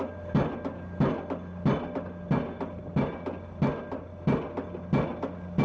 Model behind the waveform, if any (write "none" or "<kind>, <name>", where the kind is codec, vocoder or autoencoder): none